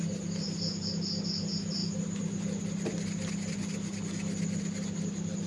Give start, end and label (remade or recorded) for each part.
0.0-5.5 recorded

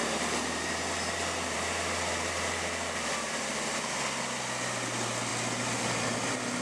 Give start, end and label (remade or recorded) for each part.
0.0-4.0 remade; 4.0-6.6 recorded

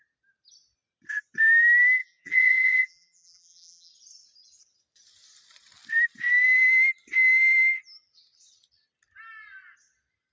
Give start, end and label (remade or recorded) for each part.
0.0-2.0 recorded; 2.0-3.9 remade; 3.9-10.3 recorded